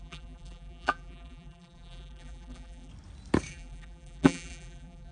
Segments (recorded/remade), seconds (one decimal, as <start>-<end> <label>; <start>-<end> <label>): 0.0-2.9 remade; 2.9-3.5 recorded; 3.5-5.1 remade